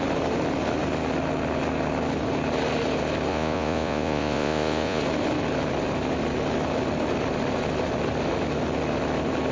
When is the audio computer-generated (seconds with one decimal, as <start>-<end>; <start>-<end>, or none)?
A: 3.3-5.0